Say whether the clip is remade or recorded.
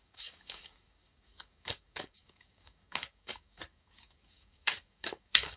remade